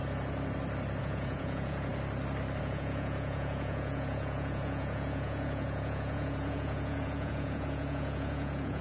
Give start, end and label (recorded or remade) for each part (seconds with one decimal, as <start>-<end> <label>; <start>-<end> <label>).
0.0-1.0 recorded; 1.0-1.9 remade; 1.9-2.6 recorded; 2.6-8.8 remade